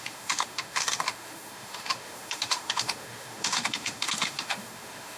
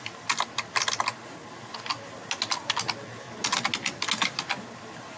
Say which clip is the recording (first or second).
second